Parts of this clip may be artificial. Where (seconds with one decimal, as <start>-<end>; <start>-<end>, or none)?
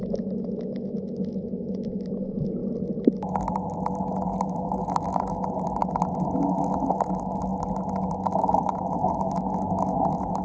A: 0.0-2.6; 4.4-7.5; 8.0-10.4